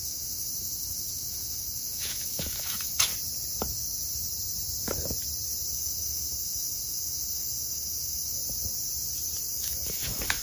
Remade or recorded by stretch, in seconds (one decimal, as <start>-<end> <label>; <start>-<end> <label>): 0.0-3.1 remade; 3.1-5.7 recorded; 5.7-8.4 remade; 8.4-9.5 recorded; 9.5-10.4 remade